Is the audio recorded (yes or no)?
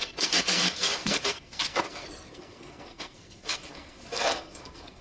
no